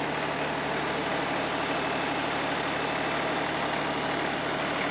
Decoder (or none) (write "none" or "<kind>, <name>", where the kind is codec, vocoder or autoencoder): none